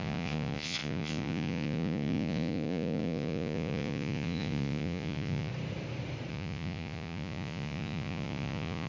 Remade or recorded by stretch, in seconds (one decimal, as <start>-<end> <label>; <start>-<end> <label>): 0.0-5.5 remade; 5.5-6.3 recorded; 6.3-8.9 remade